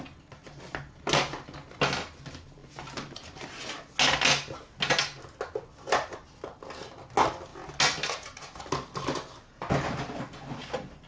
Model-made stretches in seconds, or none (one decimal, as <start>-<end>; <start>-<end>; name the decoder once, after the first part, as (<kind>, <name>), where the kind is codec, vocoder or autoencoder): none